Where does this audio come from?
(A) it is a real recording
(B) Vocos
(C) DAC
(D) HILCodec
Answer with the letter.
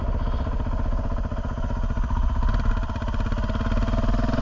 A